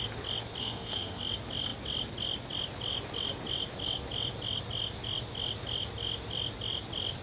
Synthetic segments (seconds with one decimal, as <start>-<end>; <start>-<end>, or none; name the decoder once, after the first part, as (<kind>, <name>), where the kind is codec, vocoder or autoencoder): 0.6-1.2 (codec, SNAC)